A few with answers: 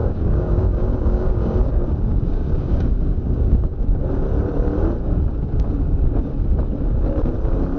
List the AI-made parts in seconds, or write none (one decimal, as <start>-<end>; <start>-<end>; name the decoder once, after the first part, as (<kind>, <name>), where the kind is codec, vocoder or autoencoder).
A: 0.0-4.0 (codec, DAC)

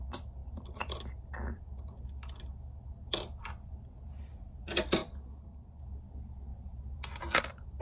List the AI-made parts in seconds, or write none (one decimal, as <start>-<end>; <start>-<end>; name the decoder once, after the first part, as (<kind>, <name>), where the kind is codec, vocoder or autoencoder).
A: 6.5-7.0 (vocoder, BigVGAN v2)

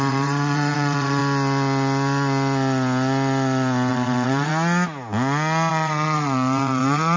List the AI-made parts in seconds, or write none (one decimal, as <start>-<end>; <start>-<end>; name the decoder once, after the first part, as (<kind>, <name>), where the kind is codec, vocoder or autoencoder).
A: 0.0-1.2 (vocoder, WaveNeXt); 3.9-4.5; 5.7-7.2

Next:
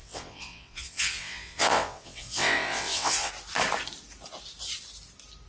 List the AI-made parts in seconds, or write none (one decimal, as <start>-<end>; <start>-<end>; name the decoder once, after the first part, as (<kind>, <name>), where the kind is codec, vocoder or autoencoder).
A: 0.0-3.3 (vocoder, WaveNeXt)

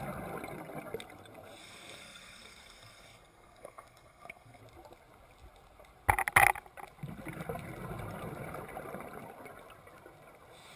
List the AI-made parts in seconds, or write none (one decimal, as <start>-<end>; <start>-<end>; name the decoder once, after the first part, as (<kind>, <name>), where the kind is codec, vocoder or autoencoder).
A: 1.6-4.6 (codec, SNAC)

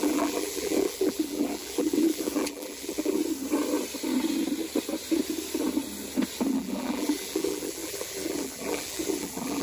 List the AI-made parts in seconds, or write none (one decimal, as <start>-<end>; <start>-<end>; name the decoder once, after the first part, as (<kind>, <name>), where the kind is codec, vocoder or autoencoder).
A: 0.0-3.2 (vocoder, BigVGAN v2); 6.5-9.6